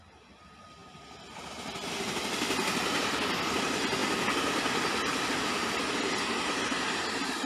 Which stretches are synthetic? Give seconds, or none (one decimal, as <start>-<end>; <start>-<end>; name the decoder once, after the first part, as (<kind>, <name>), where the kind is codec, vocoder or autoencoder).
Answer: none